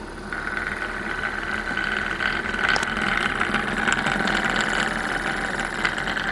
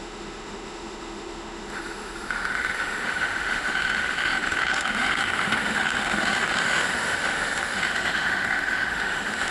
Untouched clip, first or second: first